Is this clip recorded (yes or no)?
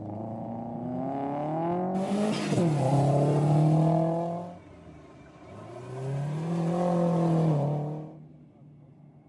yes